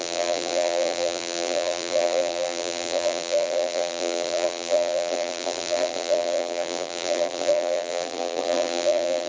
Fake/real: fake